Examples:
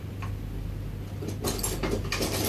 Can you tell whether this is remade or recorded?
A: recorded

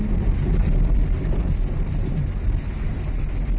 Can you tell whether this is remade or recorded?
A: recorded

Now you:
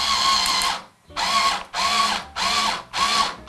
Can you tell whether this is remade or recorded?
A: recorded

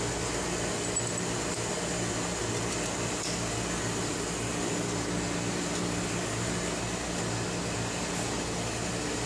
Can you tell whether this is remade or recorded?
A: recorded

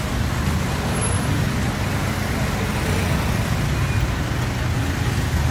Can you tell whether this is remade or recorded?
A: recorded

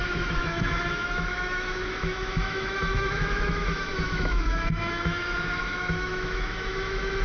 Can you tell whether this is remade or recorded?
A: remade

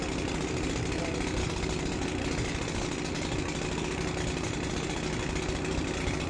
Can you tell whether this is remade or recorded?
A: recorded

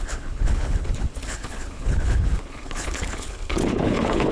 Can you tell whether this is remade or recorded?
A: remade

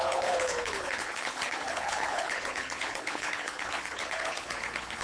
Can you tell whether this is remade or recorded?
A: remade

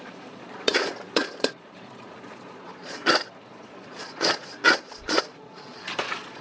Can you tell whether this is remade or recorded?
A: remade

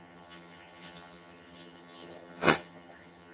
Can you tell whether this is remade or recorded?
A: remade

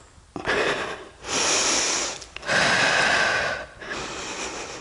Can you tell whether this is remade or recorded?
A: recorded